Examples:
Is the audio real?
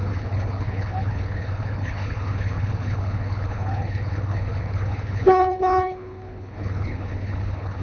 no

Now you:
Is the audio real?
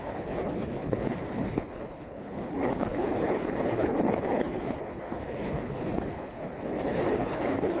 no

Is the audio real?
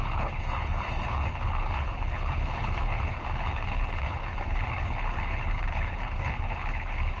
no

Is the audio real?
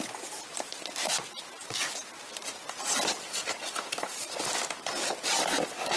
yes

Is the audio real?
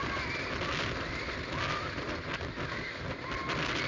yes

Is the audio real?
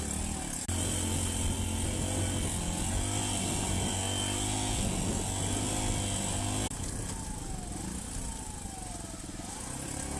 yes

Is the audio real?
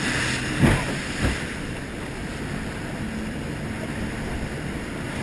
yes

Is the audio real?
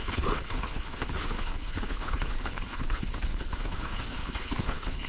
no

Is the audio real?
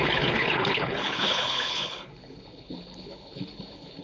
no